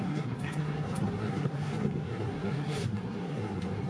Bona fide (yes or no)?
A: no